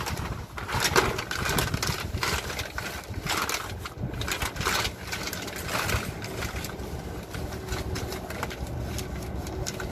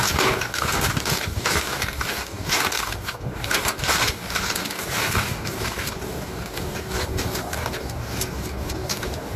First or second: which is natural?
first